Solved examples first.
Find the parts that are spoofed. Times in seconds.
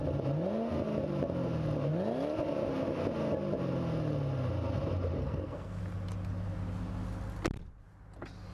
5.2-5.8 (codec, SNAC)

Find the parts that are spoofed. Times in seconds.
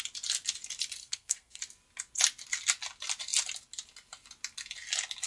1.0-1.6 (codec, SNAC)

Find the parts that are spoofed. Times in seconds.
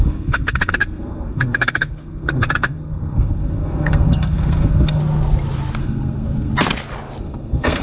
0.0-5.0 (codec, SNAC); 5.8-6.5; 7.2-7.8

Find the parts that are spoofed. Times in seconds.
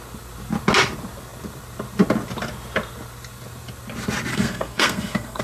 4.3-5.4 (codec, SNAC)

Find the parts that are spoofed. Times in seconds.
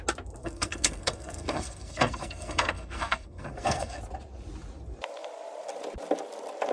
0.4-4.0 (codec, SNAC)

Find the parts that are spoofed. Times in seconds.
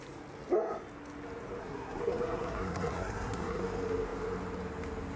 1.6-3.6 (codec, SNAC)